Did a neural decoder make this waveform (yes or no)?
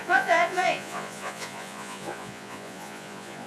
yes